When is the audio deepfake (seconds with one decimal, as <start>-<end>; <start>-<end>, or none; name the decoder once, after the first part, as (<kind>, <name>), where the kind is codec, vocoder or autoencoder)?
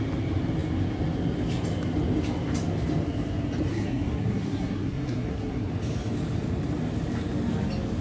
3.7-5.7 (codec, SNAC)